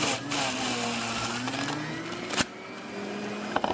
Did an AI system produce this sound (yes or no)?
no